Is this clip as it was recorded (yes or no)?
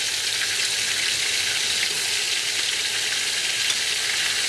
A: yes